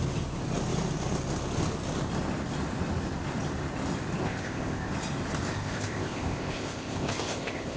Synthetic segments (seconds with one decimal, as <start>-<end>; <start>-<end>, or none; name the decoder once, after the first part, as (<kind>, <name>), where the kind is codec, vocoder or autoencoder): 4.2-4.9 (codec, ZipCodec); 5.5-7.8